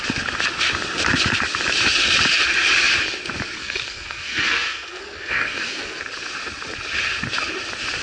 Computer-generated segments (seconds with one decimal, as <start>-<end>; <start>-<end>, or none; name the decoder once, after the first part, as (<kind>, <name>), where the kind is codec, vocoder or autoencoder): 3.6-6.0 (codec, SNAC)